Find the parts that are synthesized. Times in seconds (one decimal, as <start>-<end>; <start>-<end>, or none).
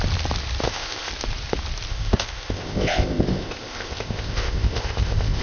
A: 0.6-1.1; 1.9-5.4